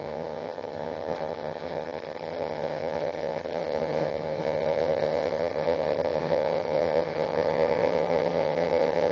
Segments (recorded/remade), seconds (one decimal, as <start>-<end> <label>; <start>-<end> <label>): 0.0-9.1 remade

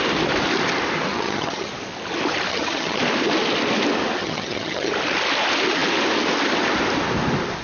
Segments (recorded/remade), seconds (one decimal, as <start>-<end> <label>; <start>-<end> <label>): 0.0-1.1 recorded; 1.1-1.7 remade; 1.7-2.5 recorded; 2.5-3.0 remade; 3.0-4.2 recorded; 4.2-4.9 remade; 4.9-7.6 recorded

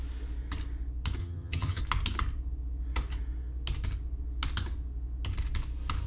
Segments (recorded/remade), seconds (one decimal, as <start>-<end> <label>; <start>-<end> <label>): 0.0-1.2 recorded; 1.2-1.8 remade; 1.8-6.1 recorded